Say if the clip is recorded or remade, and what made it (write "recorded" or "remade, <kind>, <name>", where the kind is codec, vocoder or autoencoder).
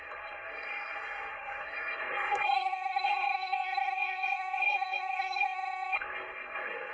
remade, codec, SNAC